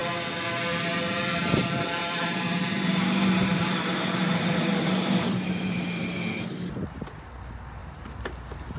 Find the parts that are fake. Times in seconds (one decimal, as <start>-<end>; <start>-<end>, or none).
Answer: 2.0-6.2; 7.8-8.8